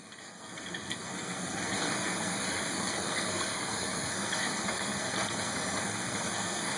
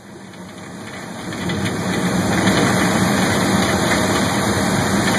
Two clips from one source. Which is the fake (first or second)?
first